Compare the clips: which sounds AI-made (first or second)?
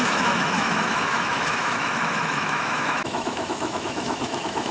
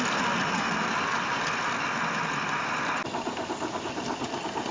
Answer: first